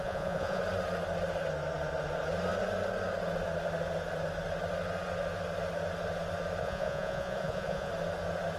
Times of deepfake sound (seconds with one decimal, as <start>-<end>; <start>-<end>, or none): 0.0-0.6; 6.6-7.9